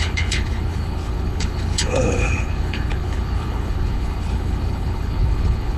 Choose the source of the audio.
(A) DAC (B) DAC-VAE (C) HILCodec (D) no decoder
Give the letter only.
C